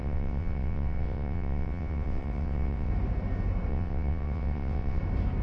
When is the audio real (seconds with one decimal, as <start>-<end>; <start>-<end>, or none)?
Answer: 2.9-3.7; 5.0-5.4